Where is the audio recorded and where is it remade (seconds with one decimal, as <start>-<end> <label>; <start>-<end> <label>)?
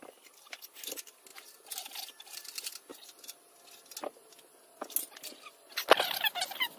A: 0.0-6.8 recorded